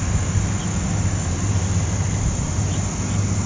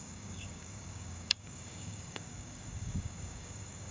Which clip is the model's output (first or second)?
second